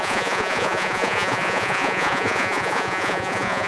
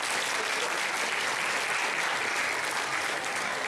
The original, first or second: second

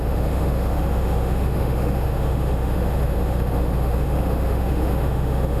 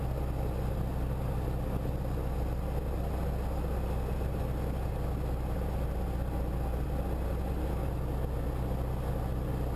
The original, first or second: second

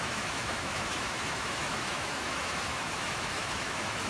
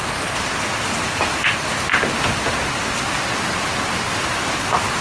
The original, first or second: second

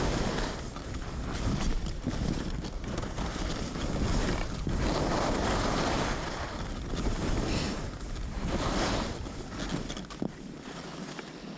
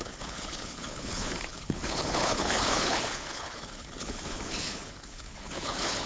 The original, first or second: first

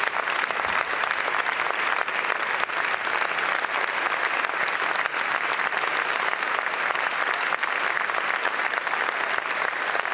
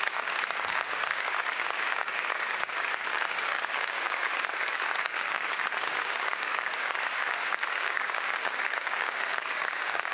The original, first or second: first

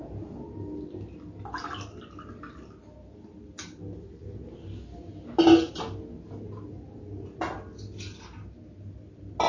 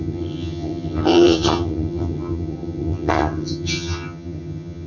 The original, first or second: first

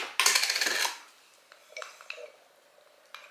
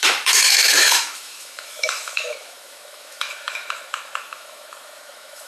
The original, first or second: first